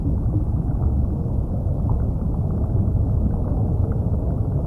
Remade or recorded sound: recorded